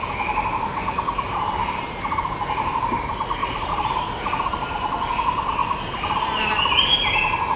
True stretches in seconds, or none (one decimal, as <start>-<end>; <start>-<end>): 0.0-1.6; 2.7-3.4; 4.0-7.6

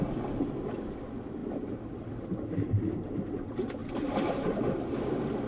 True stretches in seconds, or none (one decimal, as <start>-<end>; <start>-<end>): 0.0-1.4; 2.9-3.8; 4.6-5.5

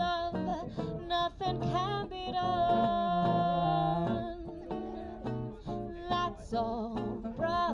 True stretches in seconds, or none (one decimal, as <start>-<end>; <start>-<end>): 0.0-7.7

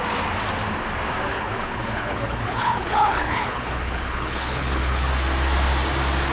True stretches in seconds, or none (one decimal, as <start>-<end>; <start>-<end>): 0.0-1.3; 5.1-6.3

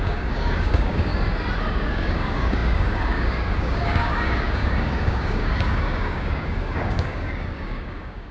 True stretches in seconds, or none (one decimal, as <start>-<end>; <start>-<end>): 1.1-1.7